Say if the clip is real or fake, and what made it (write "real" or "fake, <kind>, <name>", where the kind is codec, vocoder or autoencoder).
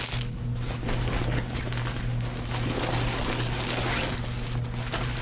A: real